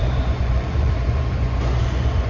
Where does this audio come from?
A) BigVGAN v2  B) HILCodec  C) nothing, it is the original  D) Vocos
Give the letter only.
D